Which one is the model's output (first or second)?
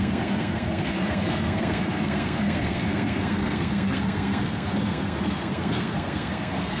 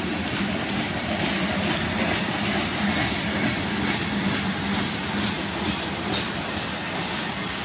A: first